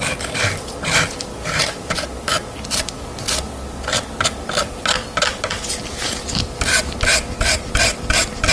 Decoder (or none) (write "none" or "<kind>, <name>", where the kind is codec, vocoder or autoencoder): none